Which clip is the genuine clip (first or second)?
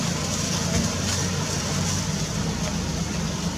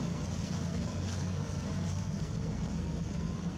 first